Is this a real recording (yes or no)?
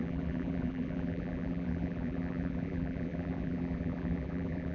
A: no